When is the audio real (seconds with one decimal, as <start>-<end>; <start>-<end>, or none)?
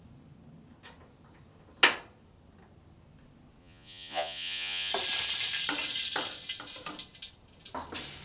0.0-3.6; 4.9-8.2